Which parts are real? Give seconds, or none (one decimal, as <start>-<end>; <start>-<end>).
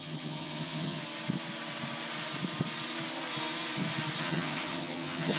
1.0-4.2